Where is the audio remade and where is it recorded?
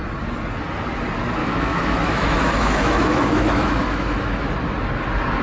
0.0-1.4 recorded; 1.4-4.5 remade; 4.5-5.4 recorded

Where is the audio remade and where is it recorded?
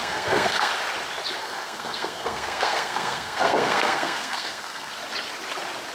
0.0-0.7 remade; 0.7-1.4 recorded; 1.4-4.9 remade; 4.9-5.9 recorded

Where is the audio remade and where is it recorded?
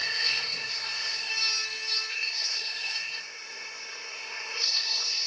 0.0-1.3 remade; 1.3-2.1 recorded; 2.1-5.3 remade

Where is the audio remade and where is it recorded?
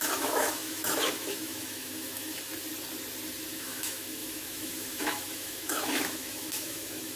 0.0-2.5 remade; 2.5-3.5 recorded; 3.5-7.2 remade